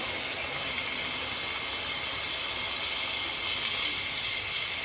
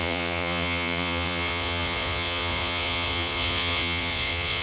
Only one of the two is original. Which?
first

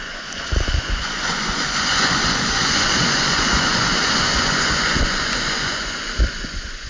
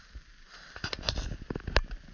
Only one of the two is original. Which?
second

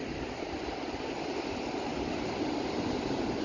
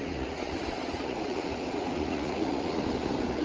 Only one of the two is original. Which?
first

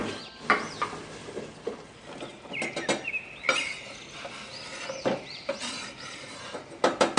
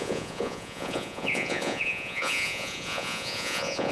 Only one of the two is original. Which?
first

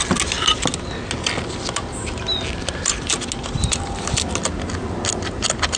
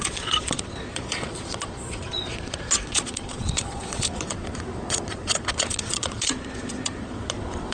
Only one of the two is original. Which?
first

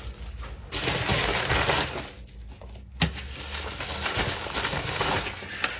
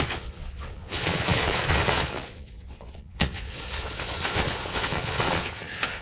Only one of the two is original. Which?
first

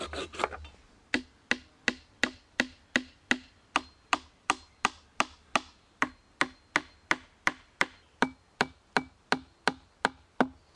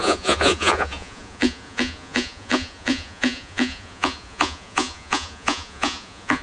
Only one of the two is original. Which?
first